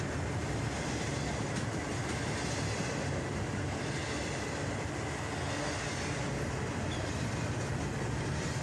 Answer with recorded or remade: recorded